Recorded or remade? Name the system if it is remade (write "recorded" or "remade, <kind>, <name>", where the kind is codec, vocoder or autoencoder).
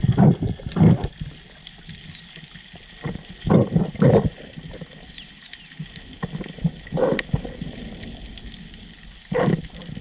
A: recorded